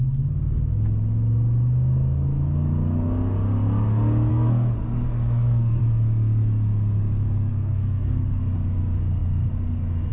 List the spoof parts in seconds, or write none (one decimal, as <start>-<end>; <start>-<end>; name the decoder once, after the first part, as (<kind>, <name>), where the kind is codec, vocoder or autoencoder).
4.3-5.8 (codec, SNAC); 7.5-8.4